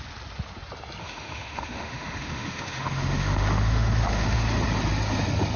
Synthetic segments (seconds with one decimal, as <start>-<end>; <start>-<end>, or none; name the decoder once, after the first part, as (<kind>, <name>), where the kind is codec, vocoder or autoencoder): 1.0-4.4 (autoencoder, DAC-VAE)